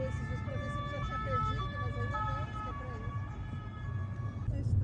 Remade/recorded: recorded